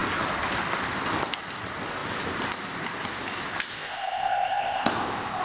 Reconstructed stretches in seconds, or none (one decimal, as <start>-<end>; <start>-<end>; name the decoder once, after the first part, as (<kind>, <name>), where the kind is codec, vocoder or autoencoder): 3.7-5.4 (codec, ZipCodec)